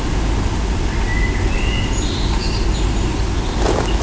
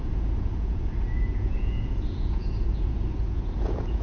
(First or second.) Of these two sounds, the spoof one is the second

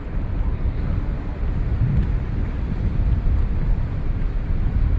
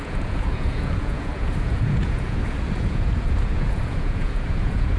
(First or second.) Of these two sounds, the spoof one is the second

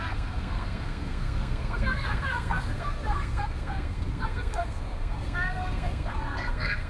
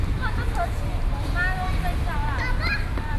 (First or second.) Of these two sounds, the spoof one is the first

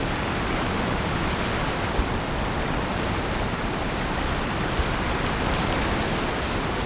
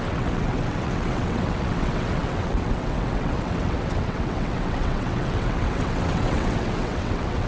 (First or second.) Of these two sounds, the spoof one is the second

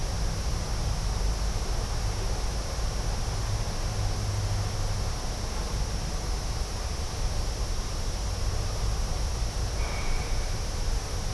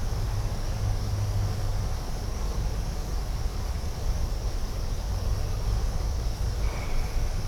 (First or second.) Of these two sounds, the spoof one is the second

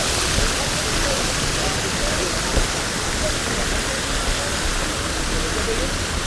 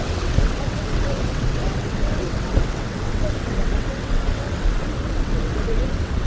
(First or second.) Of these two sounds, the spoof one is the second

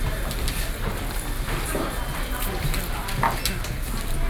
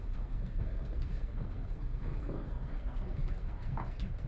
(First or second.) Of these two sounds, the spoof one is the second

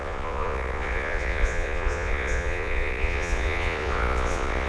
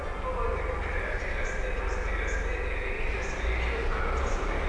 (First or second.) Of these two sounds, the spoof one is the first